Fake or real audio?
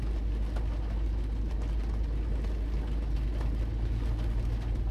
real